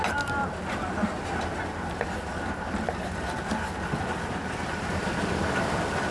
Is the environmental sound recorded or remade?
recorded